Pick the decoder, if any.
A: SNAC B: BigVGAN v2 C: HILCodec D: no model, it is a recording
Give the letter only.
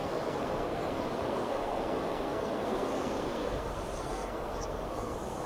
A